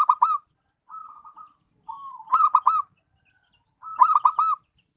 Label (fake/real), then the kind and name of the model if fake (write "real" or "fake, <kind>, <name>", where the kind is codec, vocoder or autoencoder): real